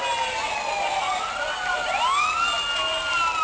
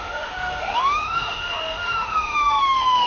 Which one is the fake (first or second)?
second